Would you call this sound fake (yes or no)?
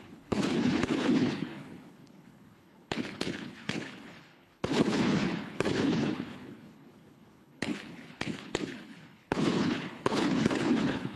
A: yes